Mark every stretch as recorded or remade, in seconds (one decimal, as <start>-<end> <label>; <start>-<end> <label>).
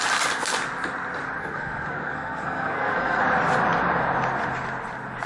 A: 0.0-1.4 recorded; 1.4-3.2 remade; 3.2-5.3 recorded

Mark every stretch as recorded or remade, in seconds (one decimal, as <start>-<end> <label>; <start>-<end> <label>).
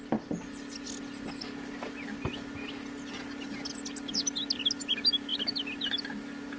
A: 0.0-6.6 recorded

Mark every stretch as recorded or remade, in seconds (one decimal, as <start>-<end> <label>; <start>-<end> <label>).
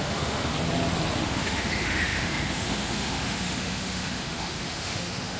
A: 0.0-0.5 remade; 0.5-1.2 recorded; 1.2-5.4 remade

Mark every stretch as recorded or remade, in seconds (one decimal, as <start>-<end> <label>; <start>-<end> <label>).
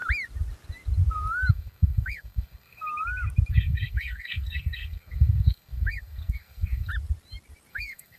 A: 0.0-1.5 recorded; 1.5-2.9 remade; 2.9-3.5 recorded; 3.5-6.9 remade; 6.9-7.7 recorded; 7.7-8.2 remade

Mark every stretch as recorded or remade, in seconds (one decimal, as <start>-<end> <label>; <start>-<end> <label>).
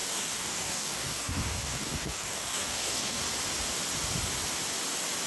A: 0.0-3.2 remade; 3.2-5.3 recorded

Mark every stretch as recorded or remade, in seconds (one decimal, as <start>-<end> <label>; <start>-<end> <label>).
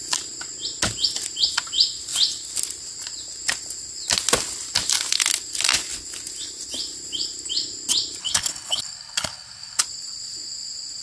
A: 0.0-8.2 recorded; 8.2-9.8 remade; 9.8-11.0 recorded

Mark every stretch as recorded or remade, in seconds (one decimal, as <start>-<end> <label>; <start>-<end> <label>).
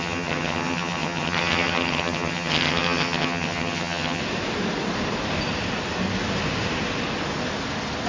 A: 0.0-4.2 remade; 4.2-8.1 recorded